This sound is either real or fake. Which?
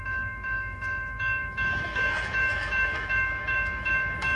fake